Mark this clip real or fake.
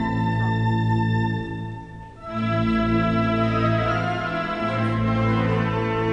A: real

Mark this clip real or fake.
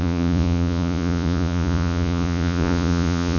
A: fake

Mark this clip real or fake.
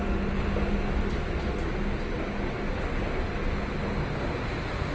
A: real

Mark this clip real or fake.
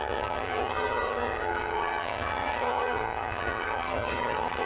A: fake